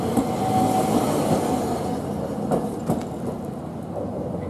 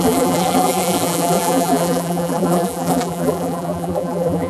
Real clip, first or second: first